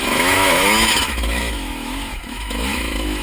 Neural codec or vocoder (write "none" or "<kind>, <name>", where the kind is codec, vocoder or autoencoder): autoencoder, DAC-VAE